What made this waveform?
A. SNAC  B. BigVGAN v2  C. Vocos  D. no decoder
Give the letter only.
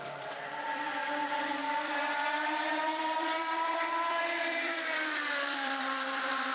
B